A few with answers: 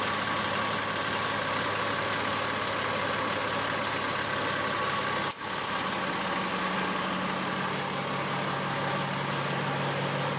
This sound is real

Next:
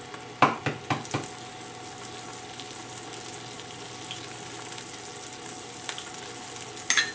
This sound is real